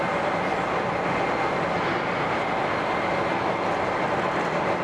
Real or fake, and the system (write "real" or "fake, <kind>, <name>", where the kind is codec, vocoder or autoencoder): real